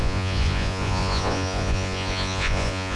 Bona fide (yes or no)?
no